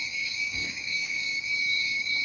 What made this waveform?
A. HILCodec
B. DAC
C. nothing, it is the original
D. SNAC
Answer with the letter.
B